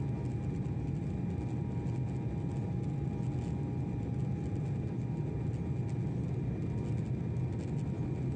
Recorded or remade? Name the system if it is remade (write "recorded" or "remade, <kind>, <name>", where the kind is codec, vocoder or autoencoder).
recorded